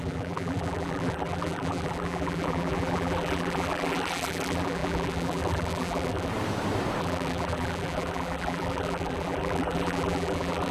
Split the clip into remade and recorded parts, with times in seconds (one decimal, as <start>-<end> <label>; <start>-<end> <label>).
0.0-6.3 remade; 6.3-7.0 recorded; 7.0-10.7 remade